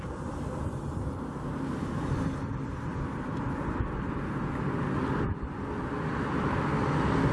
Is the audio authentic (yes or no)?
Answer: yes